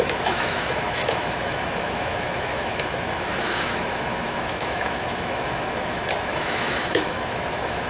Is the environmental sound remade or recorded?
remade